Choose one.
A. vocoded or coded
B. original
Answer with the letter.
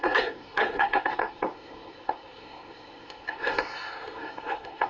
A